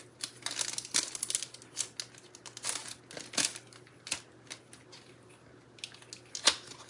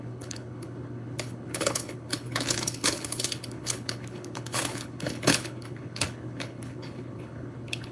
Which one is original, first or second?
first